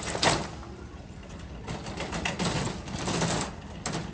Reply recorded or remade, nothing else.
recorded